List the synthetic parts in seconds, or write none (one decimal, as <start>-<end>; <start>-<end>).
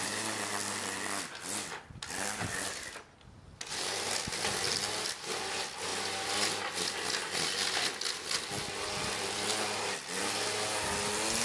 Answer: none